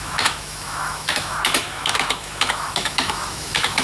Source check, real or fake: fake